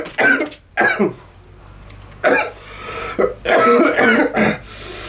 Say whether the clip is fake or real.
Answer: real